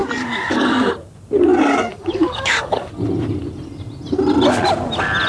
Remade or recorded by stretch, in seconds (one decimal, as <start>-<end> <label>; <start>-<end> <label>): 0.0-0.9 remade; 0.9-1.5 recorded; 1.5-2.9 remade; 2.9-5.3 recorded